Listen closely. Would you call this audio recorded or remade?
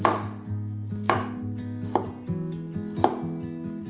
recorded